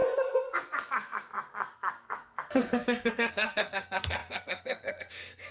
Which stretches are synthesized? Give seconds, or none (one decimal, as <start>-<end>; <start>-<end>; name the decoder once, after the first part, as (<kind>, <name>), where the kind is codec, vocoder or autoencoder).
0.0-5.5 (codec, SNAC)

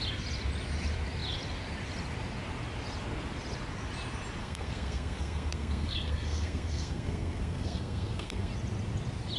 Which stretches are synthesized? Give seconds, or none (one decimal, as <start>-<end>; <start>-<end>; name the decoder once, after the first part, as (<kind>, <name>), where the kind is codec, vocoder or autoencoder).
4.4-8.5 (codec, SNAC)

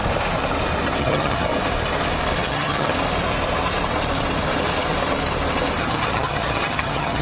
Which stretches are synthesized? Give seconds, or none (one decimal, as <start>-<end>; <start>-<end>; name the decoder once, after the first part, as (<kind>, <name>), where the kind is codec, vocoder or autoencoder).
1.0-1.5 (vocoder, HiFi-GAN); 2.4-2.9; 5.8-7.2

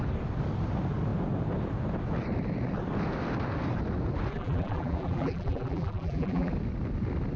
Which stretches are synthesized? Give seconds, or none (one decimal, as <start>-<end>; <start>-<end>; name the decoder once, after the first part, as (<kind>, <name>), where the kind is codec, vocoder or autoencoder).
4.3-6.5 (vocoder, BigVGAN v2)